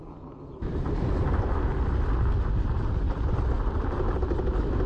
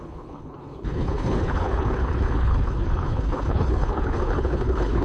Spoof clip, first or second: second